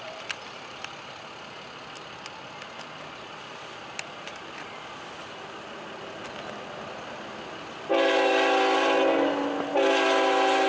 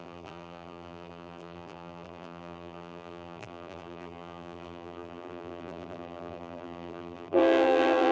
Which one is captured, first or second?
first